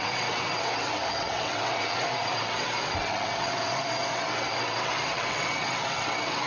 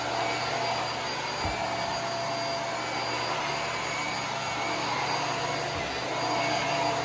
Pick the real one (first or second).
second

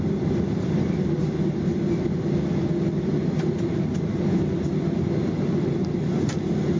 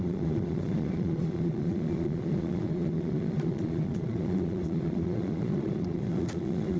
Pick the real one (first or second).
first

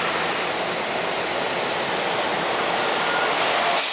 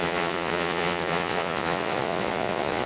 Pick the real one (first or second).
first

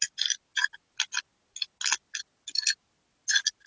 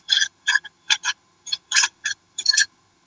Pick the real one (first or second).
first